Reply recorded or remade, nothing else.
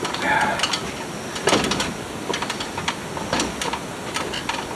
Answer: recorded